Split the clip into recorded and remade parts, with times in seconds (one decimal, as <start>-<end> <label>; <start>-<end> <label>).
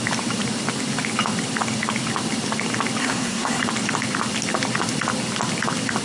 0.0-3.0 recorded; 3.0-3.6 remade; 3.6-6.0 recorded